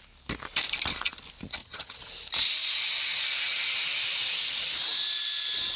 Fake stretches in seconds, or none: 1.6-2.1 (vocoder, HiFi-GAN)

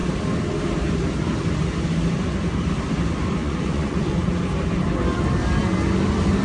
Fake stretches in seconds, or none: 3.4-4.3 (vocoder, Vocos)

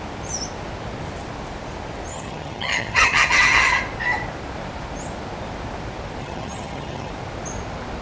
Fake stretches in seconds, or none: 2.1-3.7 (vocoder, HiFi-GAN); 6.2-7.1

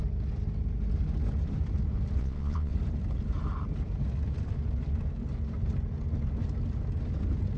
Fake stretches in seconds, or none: 2.2-2.7 (vocoder, Vocos)

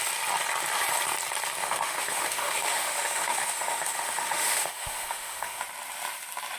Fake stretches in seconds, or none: 1.6-5.6 (autoencoder, DAC-VAE)